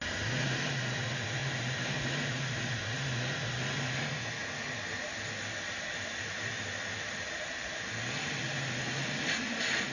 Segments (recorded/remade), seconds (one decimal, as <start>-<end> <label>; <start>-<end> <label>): 0.0-1.4 recorded; 1.4-2.6 remade; 2.6-9.9 recorded